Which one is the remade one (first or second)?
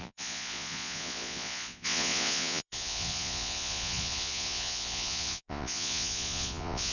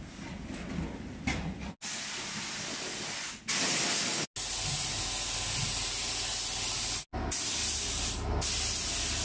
first